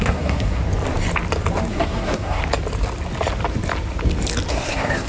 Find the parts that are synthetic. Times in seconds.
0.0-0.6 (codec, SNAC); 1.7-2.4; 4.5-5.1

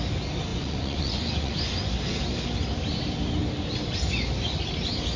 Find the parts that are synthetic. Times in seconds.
0.5-1.6 (vocoder, Vocos)

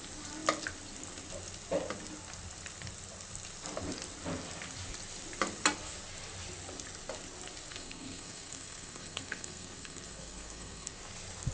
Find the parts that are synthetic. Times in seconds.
7.7-11.0 (codec, SNAC)

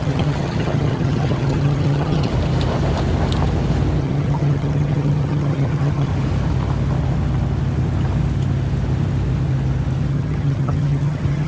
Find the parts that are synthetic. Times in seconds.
0.0-2.3 (vocoder, HiFi-GAN); 4.0-6.1; 10.1-11.5